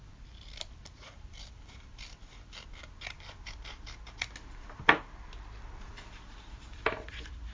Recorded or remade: remade